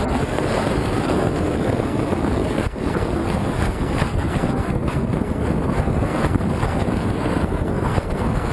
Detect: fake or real fake